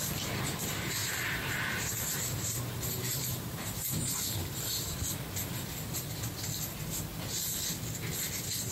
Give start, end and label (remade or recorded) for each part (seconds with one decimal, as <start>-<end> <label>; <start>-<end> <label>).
0.0-1.0 recorded; 1.0-3.9 remade; 3.9-8.7 recorded